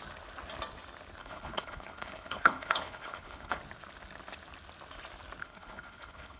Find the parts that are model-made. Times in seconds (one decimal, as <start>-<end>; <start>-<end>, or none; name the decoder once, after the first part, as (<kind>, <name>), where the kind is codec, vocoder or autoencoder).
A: 1.2-3.6 (codec, HILCodec); 5.4-6.4